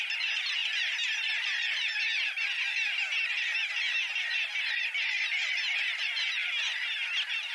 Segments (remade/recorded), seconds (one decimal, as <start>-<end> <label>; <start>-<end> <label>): 0.0-7.5 recorded